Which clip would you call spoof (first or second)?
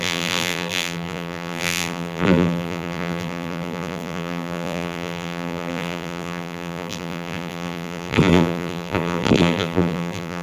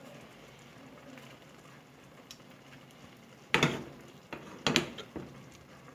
first